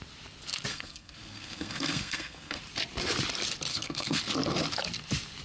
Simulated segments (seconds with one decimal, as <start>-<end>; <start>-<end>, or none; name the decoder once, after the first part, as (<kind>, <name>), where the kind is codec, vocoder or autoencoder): 0.7-2.6 (codec, SNAC); 3.7-4.2

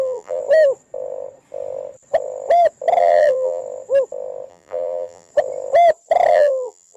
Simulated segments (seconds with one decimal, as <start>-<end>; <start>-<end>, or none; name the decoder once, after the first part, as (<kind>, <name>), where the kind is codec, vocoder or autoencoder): 0.0-0.4 (vocoder, BigVGAN v2); 3.0-3.6; 4.5-5.3; 6.3-7.0

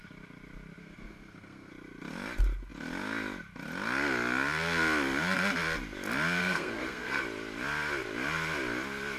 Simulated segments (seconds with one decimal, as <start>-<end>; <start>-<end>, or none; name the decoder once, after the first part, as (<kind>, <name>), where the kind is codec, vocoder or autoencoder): 0.8-1.7 (codec, SNAC); 6.4-7.2

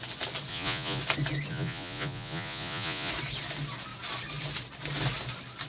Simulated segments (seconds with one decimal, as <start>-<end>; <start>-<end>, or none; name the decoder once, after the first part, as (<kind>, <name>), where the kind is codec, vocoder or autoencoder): 0.5-1.0 (vocoder, Vocos); 1.5-3.1

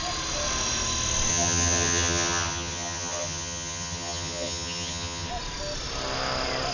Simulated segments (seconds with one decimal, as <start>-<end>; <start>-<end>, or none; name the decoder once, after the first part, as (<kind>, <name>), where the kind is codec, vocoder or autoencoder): 1.3-5.3 (vocoder, HiFi-GAN)

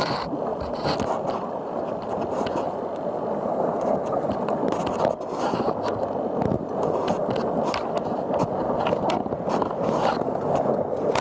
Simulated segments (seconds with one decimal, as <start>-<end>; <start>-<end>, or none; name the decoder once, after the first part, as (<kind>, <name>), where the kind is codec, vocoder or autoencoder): none

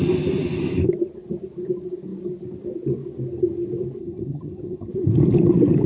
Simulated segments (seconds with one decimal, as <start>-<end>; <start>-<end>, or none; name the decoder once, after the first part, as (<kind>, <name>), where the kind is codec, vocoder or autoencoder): 4.0-4.9 (vocoder, HiFi-GAN)